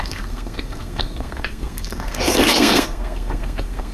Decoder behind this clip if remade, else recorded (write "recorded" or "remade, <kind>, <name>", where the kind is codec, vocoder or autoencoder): remade, codec, SNAC